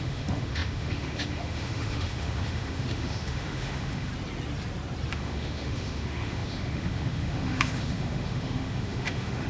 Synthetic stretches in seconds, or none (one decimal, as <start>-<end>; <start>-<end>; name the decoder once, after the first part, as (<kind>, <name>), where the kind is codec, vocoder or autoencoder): 0.0-4.1 (autoencoder, DAC-VAE); 5.1-9.5